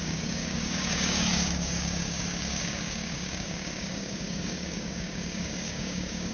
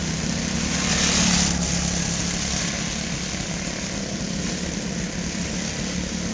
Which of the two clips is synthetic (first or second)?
first